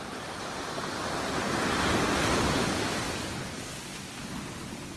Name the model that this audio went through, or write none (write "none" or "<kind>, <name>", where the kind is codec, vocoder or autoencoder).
none